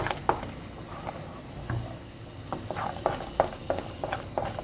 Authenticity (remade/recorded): recorded